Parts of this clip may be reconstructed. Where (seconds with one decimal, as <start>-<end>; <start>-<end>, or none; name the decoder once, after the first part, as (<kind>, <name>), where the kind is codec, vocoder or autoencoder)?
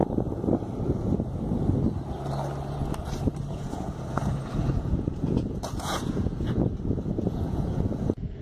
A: 3.5-8.4 (vocoder, Vocos)